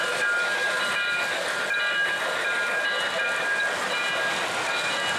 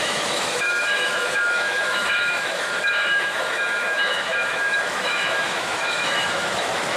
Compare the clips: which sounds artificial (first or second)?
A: second